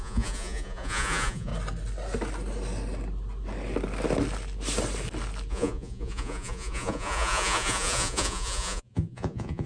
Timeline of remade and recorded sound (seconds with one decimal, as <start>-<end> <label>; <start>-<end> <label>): 0.0-1.5 remade; 1.5-5.5 recorded; 5.5-9.7 remade